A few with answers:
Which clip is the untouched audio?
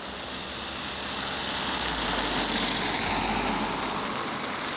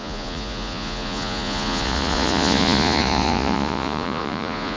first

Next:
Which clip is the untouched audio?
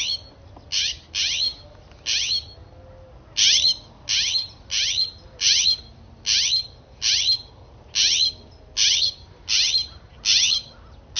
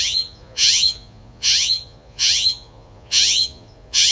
first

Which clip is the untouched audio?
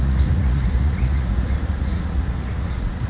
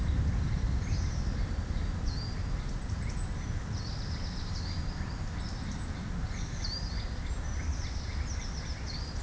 second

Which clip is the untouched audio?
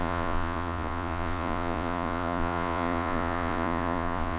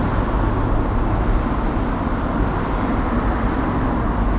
second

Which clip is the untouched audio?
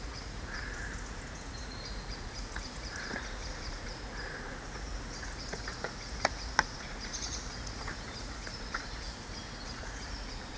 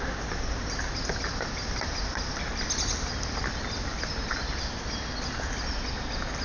second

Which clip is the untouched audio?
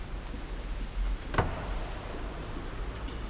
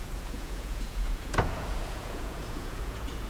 first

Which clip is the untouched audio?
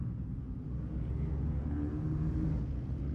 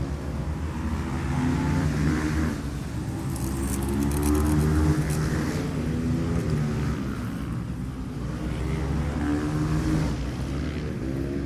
second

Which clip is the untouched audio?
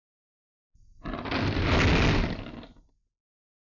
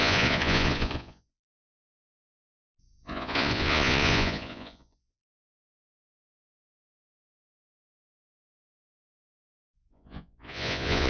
first